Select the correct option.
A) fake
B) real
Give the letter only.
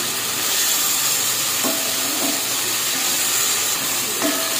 B